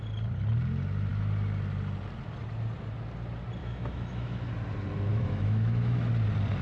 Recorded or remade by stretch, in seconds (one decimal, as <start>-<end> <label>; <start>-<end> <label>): 0.0-3.6 recorded; 3.6-4.5 remade; 4.5-5.1 recorded; 5.1-6.1 remade; 6.1-6.6 recorded